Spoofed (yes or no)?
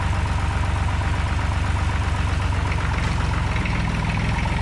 no